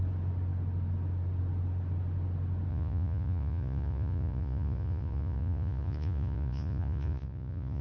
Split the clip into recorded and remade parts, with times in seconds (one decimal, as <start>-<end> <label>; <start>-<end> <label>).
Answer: 0.0-2.7 recorded; 2.7-7.8 remade